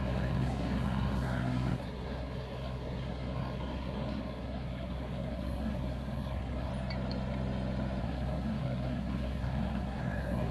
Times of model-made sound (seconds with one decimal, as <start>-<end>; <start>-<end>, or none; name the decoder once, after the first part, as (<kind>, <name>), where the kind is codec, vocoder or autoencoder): 0.0-6.7 (codec, SNAC); 8.0-10.5